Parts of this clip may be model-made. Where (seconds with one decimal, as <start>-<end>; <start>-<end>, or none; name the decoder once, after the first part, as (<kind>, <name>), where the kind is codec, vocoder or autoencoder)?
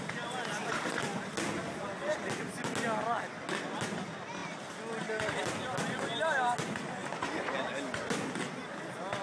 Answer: none